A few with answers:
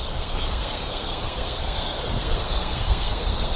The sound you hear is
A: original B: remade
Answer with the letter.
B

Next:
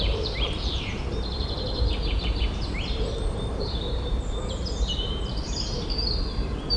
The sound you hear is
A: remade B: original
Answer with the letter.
A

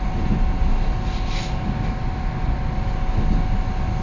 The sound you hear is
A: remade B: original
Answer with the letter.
B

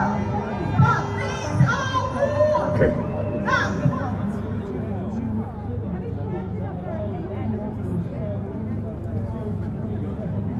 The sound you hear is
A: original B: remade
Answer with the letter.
A